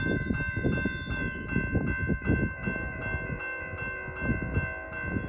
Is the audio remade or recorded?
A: recorded